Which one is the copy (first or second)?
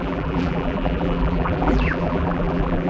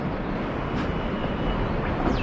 first